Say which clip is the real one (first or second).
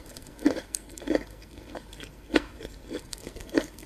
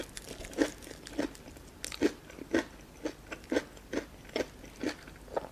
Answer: second